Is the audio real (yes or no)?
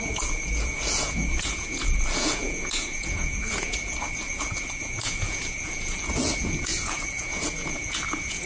no